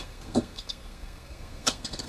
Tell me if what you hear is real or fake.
fake